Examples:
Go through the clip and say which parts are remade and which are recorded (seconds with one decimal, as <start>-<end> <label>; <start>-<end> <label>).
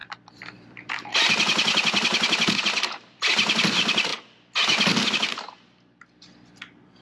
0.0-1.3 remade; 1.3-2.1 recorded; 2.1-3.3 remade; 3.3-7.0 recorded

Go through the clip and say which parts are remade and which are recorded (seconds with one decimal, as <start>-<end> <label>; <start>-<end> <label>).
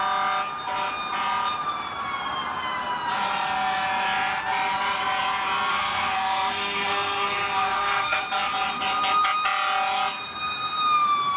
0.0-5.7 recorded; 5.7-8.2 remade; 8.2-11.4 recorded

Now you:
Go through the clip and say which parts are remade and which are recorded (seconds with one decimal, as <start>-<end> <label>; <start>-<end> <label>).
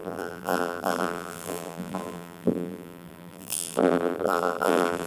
0.0-5.1 remade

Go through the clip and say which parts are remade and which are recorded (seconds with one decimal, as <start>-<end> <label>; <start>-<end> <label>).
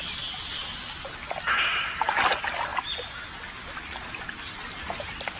0.0-5.4 recorded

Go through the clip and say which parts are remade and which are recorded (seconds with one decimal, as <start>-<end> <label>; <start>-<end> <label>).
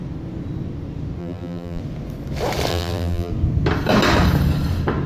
0.0-1.2 recorded; 1.2-1.8 remade; 1.8-2.7 recorded; 2.7-3.3 remade; 3.3-5.1 recorded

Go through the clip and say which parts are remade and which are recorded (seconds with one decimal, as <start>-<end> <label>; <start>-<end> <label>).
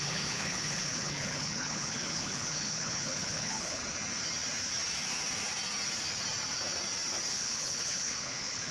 0.0-3.8 remade; 3.8-7.3 recorded; 7.3-8.7 remade